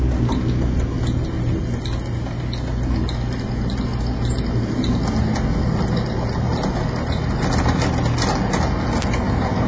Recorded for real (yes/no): yes